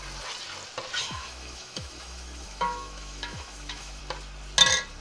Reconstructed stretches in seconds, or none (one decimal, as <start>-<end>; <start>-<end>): 1.0-4.0